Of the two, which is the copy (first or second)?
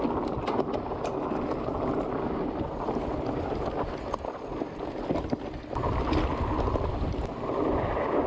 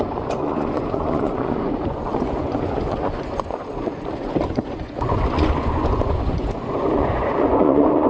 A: second